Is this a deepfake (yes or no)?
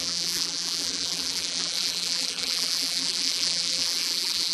yes